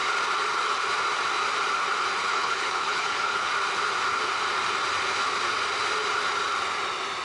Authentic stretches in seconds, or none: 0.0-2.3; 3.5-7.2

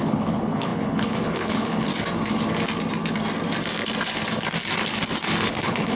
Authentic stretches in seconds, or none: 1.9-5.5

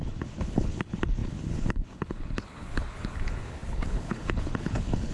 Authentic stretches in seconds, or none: none

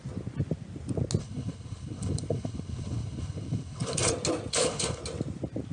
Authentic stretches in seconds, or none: 0.0-1.2; 4.1-4.5; 5.0-5.7

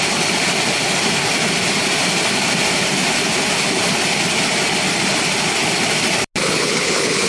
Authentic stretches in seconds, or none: 0.0-6.4

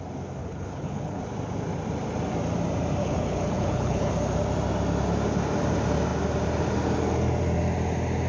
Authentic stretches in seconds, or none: 0.0-0.4; 1.2-3.0; 4.1-8.3

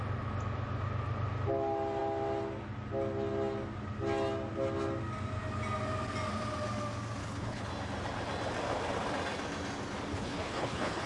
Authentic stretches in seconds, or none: 0.0-7.2; 7.7-10.1

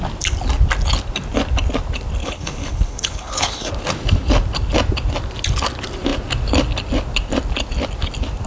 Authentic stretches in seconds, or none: 0.0-2.2; 3.7-8.5